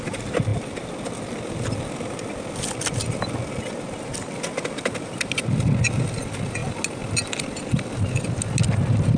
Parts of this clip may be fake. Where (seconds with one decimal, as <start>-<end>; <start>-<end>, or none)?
none